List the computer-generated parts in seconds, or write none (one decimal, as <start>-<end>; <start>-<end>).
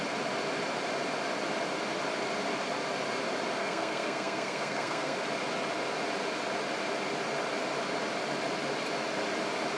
3.6-5.2